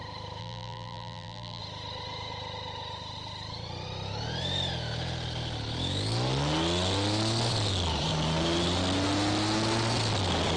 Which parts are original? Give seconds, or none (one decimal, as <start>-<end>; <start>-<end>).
0.0-0.4; 1.6-10.6